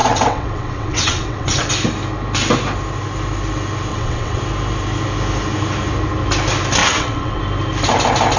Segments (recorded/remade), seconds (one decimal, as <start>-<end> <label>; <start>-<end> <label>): 0.0-1.7 remade; 1.7-3.9 recorded; 3.9-4.4 remade; 4.4-6.8 recorded; 6.8-7.4 remade; 7.4-8.4 recorded